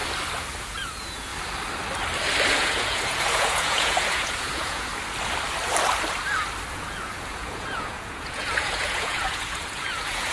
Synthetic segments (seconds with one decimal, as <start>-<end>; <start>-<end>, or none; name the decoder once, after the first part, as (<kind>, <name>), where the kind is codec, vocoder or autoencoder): 0.6-1.3 (vocoder, Vocos); 2.5-4.9; 6.7-10.3